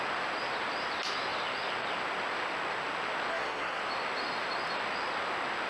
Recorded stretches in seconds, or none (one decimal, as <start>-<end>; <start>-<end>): 0.0-3.3; 3.8-5.7